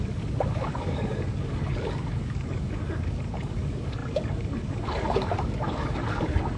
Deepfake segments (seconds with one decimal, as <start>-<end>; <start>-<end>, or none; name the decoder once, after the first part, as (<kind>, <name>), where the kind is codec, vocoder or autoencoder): 0.0-6.6 (codec, DAC)